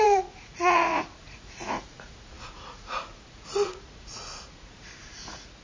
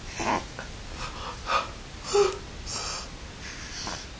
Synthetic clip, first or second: first